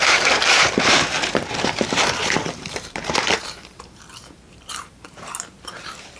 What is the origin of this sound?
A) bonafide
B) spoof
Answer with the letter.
B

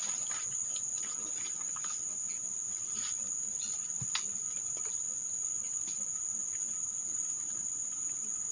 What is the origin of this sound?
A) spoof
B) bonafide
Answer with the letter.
B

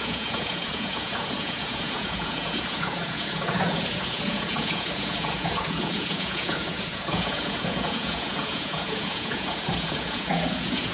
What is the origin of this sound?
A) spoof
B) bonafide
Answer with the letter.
A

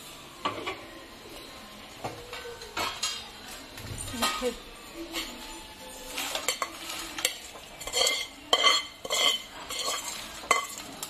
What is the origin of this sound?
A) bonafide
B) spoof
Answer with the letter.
A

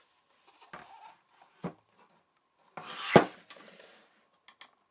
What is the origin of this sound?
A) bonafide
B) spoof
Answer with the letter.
A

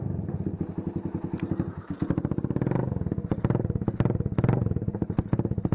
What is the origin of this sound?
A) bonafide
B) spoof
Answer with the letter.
A